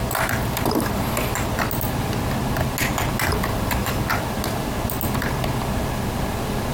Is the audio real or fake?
real